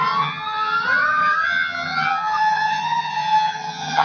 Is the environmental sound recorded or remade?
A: remade